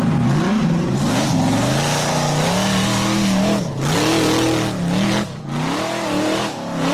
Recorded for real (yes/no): yes